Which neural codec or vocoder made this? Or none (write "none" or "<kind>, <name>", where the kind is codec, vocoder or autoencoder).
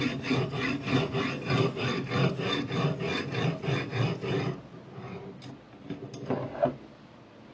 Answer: none